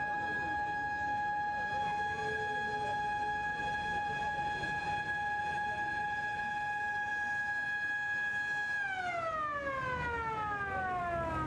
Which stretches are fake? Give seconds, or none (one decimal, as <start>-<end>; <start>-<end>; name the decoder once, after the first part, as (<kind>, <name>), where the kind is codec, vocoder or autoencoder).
3.9-5.4 (vocoder, BigVGAN v2)